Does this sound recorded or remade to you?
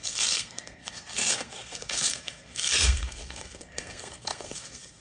remade